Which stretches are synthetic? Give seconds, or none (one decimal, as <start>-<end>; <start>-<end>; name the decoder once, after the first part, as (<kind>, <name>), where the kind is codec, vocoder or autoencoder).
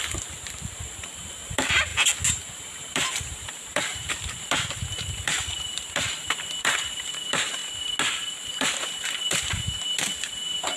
0.0-1.9 (vocoder, BigVGAN v2); 2.4-7.6; 8.4-10.8